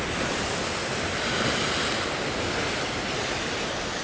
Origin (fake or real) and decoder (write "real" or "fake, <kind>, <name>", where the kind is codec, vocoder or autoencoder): real